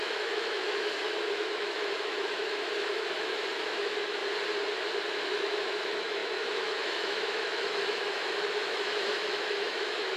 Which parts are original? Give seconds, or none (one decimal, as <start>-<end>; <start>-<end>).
4.2-5.2